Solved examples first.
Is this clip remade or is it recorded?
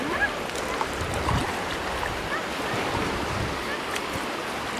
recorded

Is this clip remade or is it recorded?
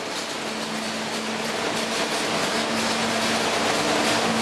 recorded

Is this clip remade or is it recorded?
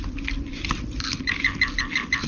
recorded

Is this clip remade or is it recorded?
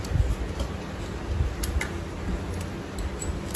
recorded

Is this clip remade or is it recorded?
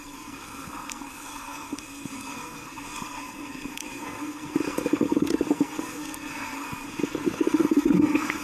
remade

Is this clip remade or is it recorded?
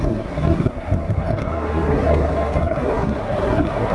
remade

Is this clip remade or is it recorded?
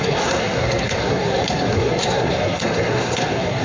remade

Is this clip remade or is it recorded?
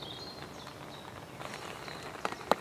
recorded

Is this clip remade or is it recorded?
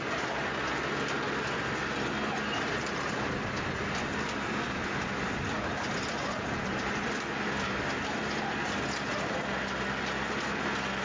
recorded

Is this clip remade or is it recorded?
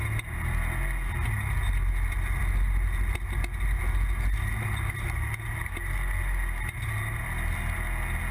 recorded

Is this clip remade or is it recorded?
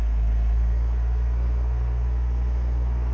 remade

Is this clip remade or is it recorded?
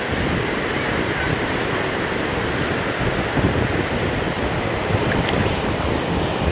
recorded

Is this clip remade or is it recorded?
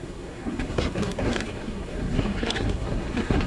remade